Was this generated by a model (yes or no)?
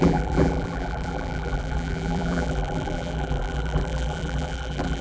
yes